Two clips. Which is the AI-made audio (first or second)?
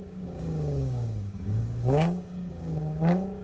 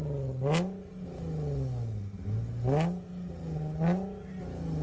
first